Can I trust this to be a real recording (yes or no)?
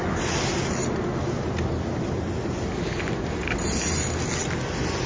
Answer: yes